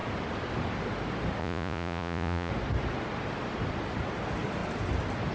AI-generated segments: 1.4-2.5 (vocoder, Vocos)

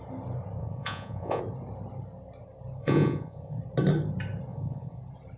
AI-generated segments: 0.6-1.4 (vocoder, Vocos); 2.8-3.6; 4.5-5.0

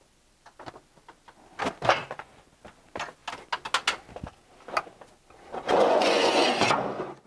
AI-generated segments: 2.0-2.6 (vocoder, Vocos); 5.7-7.3

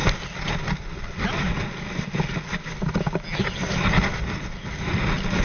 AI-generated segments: none